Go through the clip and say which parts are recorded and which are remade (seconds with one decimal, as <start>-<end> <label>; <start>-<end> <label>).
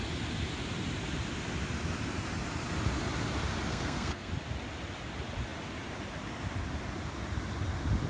0.0-3.7 recorded; 3.7-4.3 remade; 4.3-8.1 recorded